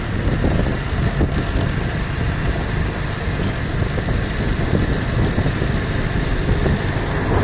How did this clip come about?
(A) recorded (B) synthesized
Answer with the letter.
A